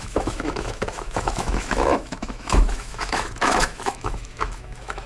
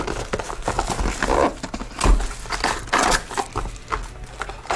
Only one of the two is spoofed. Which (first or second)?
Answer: first